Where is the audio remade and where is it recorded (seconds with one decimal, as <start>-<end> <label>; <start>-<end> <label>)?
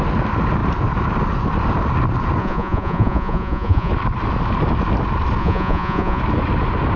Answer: 0.0-2.4 recorded; 2.4-3.9 remade; 3.9-5.4 recorded; 5.4-6.2 remade; 6.2-7.0 recorded